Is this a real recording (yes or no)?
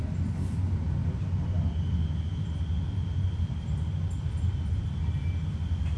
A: yes